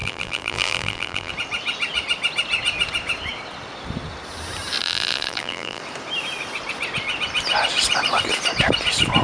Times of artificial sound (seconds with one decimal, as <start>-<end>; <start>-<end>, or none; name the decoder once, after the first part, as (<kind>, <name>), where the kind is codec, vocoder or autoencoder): 0.0-1.3 (vocoder, BigVGAN v2); 4.8-5.8